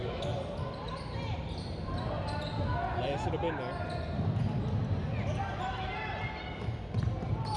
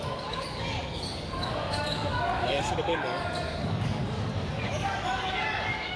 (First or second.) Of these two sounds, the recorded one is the first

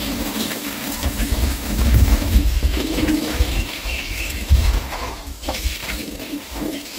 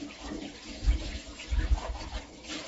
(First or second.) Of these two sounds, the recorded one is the second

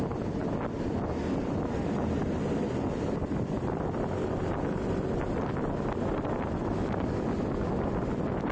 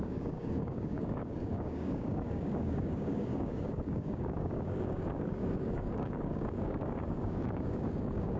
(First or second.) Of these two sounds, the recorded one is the first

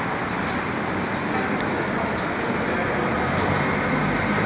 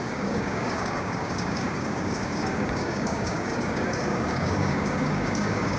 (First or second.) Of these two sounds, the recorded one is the first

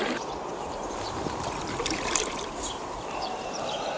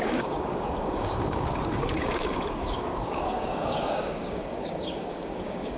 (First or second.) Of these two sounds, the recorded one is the first